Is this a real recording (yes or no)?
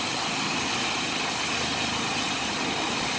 yes